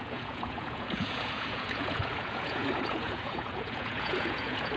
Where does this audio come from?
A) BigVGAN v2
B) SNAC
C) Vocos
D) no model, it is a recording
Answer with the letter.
C